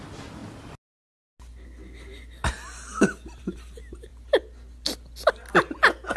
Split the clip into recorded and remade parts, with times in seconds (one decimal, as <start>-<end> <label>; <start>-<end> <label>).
0.0-6.2 recorded